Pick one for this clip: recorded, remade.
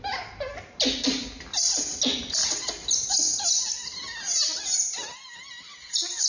recorded